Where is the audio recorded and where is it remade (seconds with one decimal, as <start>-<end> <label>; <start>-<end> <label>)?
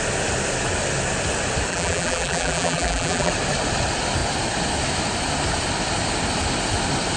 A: 0.0-1.7 recorded; 1.7-3.3 remade; 3.3-7.2 recorded